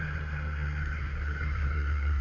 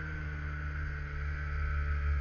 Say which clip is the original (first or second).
second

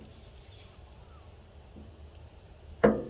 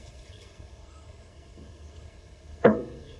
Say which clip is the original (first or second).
first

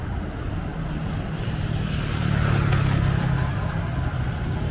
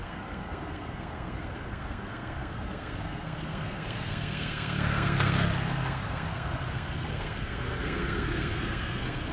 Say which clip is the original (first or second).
first